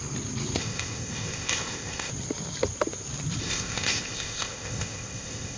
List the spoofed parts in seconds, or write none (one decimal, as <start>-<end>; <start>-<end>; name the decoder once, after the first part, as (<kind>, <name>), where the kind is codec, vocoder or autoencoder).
0.6-2.1 (codec, ZipCodec); 3.4-5.6